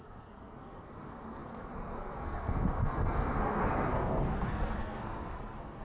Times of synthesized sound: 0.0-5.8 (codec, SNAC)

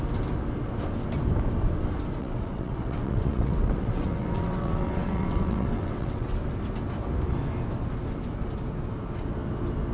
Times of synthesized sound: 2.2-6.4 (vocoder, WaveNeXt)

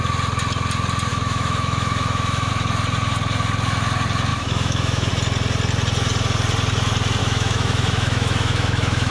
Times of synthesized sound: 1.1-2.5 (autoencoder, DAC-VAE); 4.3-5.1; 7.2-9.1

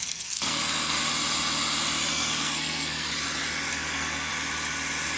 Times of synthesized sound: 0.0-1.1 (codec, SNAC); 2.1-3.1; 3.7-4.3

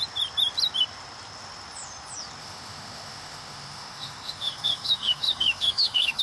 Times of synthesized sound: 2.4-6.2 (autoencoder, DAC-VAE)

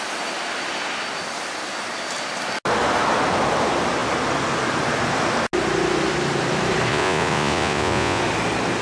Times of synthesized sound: 6.9-8.2 (vocoder, Vocos)